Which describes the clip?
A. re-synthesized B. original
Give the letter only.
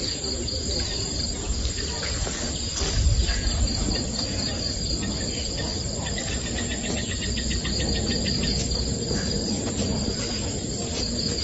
B